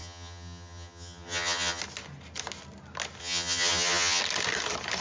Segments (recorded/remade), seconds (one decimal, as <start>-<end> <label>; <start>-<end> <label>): 0.0-1.8 remade; 1.8-3.2 recorded; 3.2-4.2 remade; 4.2-5.0 recorded